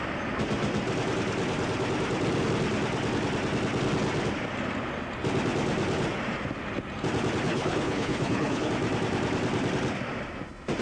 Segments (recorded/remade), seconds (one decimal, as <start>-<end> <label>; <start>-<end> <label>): 0.0-7.5 recorded; 7.5-8.7 remade; 8.7-10.8 recorded